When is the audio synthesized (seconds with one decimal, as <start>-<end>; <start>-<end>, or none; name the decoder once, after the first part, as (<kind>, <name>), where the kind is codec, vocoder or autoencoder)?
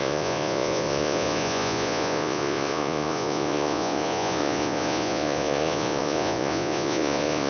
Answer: 0.0-7.5 (vocoder, Vocos)